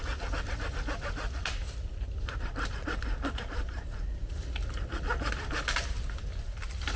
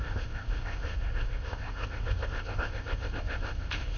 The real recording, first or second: first